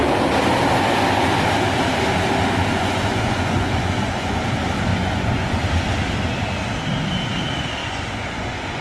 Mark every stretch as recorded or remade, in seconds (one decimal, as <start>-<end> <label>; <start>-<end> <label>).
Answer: 0.0-2.7 recorded; 2.7-4.4 remade; 4.4-4.9 recorded; 4.9-5.6 remade; 5.6-7.8 recorded; 7.8-8.8 remade